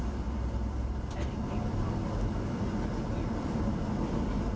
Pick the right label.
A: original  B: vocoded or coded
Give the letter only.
B